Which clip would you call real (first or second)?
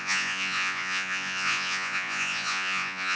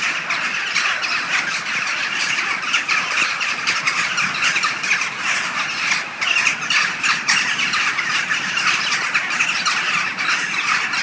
second